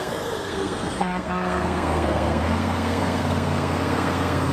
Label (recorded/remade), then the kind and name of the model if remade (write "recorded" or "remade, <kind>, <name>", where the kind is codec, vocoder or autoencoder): remade, codec, SNAC